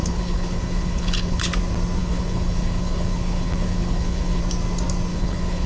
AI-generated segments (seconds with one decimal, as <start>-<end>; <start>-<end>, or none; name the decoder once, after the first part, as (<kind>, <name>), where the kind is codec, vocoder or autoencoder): 0.0-1.5 (codec, HILCodec); 2.0-4.4; 5.1-5.7